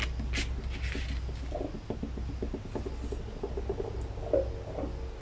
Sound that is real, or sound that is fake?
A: real